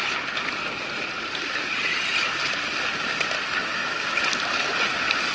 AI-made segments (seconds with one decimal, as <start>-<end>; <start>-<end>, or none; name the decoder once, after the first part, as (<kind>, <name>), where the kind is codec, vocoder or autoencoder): 3.6-4.2 (autoencoder, DAC-VAE)